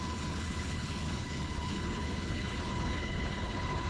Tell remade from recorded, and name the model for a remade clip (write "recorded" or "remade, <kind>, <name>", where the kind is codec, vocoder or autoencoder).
remade, codec, HILCodec